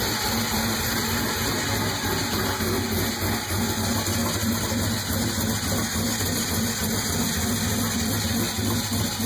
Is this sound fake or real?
real